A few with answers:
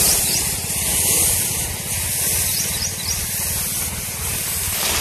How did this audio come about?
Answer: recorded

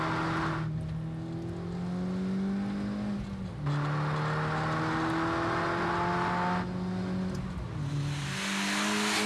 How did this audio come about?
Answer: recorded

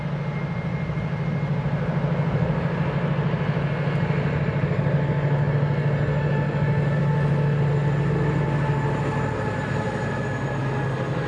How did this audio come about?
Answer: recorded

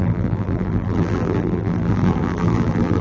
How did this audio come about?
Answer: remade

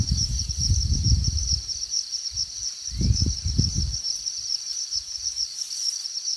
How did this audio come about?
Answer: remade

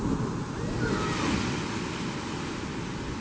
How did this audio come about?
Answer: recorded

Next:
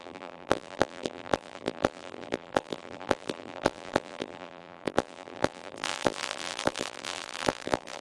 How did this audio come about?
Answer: remade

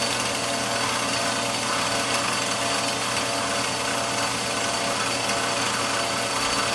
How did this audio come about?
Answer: recorded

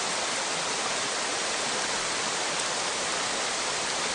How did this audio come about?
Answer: recorded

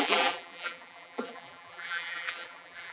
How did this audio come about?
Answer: remade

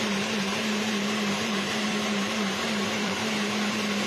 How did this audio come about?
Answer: remade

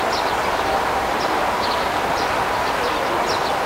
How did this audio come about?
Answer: recorded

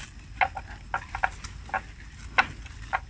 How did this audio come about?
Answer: recorded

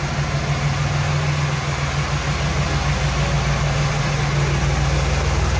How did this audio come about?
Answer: recorded